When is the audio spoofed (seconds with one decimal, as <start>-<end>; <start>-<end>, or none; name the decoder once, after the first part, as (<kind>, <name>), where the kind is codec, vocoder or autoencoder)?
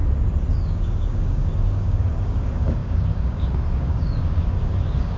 0.5-5.2 (codec, DAC)